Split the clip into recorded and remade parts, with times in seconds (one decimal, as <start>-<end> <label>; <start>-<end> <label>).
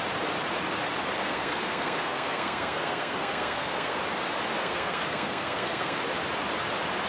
0.0-1.2 recorded; 1.2-4.0 remade; 4.0-4.6 recorded; 4.6-6.0 remade; 6.0-7.1 recorded